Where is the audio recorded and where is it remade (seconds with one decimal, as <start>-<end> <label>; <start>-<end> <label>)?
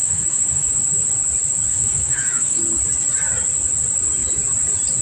0.0-0.7 remade; 0.7-1.7 recorded; 1.7-2.6 remade; 2.6-5.0 recorded